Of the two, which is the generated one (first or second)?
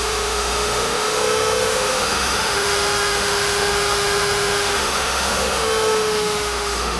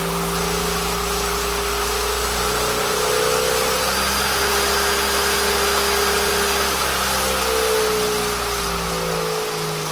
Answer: first